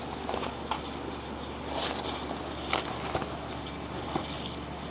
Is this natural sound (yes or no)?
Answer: yes